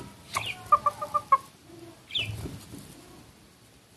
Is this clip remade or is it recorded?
recorded